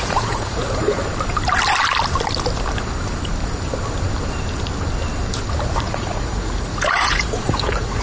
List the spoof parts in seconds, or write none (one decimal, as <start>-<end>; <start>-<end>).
0.0-1.0; 5.8-8.0